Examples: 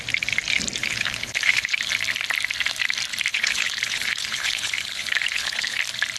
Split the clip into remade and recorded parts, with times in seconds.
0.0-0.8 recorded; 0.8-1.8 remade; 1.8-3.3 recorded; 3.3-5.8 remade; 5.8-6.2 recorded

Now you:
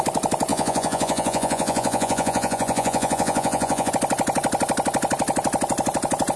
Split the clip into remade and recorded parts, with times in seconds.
0.0-0.5 recorded; 0.5-3.9 remade; 3.9-6.4 recorded